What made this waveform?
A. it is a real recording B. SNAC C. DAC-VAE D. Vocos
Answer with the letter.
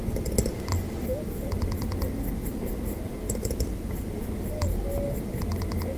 A